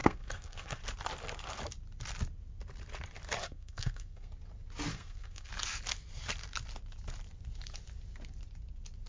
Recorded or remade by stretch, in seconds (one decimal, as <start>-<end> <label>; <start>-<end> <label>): 0.0-0.8 remade; 0.8-3.4 recorded; 3.4-4.3 remade; 4.3-4.9 recorded; 4.9-5.5 remade; 5.5-9.1 recorded